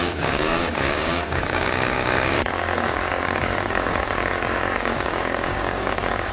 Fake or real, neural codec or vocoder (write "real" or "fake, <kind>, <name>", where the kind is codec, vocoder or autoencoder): fake, codec, DAC